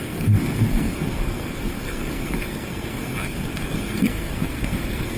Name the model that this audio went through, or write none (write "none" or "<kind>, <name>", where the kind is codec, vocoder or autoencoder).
codec, SNAC